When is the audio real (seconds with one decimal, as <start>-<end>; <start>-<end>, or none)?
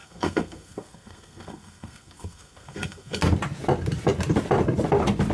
3.2-5.3